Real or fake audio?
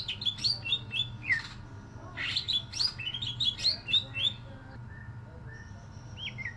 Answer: real